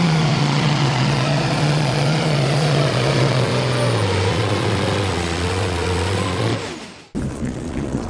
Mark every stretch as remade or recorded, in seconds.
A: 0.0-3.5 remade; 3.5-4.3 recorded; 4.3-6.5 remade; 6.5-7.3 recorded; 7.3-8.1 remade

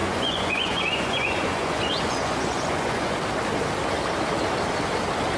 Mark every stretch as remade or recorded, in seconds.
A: 0.0-3.2 remade; 3.2-5.4 recorded

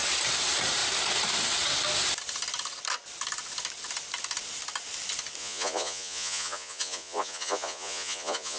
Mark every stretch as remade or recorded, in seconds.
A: 0.0-5.4 recorded; 5.4-8.6 remade